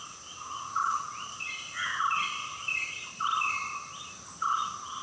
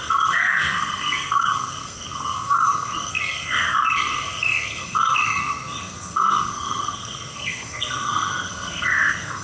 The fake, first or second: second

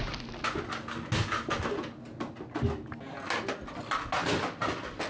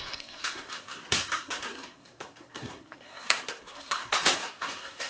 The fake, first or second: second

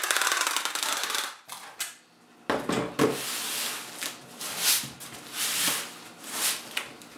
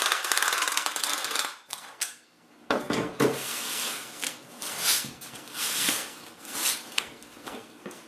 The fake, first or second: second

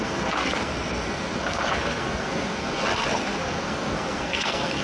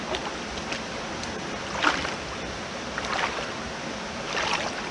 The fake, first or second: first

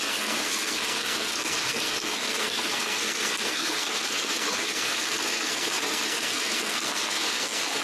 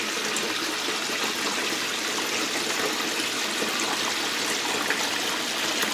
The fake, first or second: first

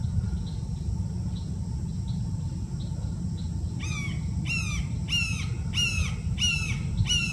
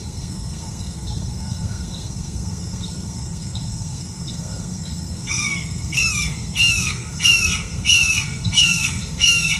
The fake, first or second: second